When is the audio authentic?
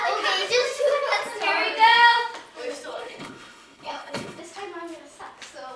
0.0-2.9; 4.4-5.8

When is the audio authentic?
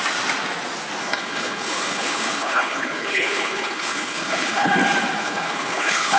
0.0-1.0; 4.7-5.2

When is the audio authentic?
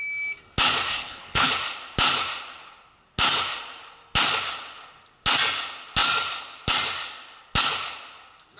0.0-0.9; 1.5-8.6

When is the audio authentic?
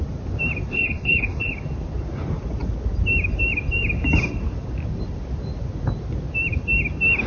0.0-0.7; 1.5-7.3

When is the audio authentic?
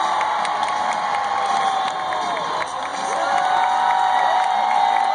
0.0-5.1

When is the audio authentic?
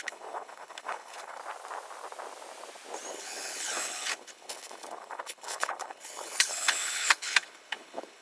1.4-3.1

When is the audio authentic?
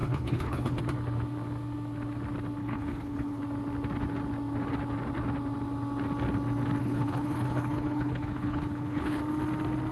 0.8-2.6; 3.4-6.8; 9.2-9.9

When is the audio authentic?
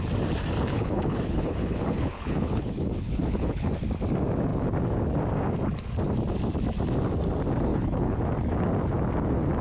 0.0-0.7; 3.7-7.7; 8.2-9.6